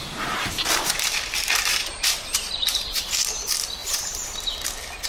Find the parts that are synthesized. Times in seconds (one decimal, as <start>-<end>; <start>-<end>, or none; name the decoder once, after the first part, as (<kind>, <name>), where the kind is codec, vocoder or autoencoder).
0.0-3.1 (vocoder, BigVGAN v2); 3.8-4.4